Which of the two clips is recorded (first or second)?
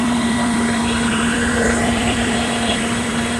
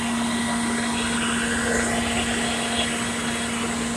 second